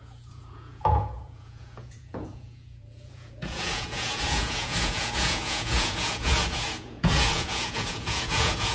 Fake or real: fake